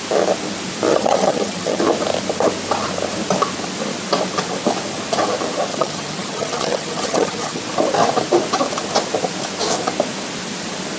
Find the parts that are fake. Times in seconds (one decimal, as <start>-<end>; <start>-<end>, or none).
0.9-1.8; 5.7-7.6